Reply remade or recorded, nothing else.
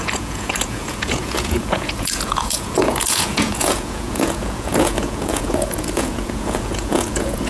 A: remade